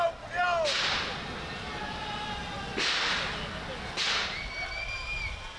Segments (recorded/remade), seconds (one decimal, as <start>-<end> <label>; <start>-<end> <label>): 0.0-5.6 recorded